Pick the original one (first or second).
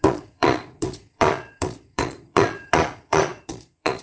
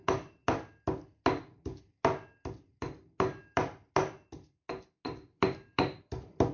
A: second